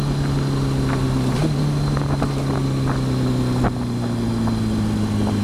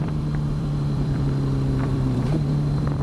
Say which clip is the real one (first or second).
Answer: first